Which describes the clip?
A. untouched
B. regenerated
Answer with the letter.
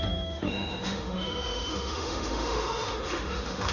B